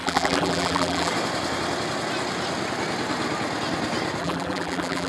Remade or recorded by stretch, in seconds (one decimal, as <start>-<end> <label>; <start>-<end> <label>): 0.0-1.1 remade; 1.1-4.2 recorded; 4.2-5.1 remade